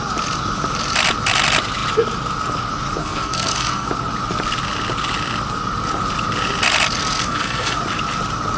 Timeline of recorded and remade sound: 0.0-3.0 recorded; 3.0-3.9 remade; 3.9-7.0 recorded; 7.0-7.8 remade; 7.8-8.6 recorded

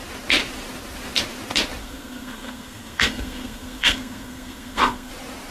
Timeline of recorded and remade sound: 0.0-1.8 recorded; 1.8-5.1 remade; 5.1-5.5 recorded

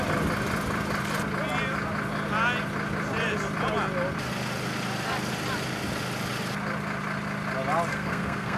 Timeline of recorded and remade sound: 0.0-7.9 recorded; 7.9-8.6 remade